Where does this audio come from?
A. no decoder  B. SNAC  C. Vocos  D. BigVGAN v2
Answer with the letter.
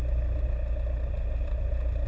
A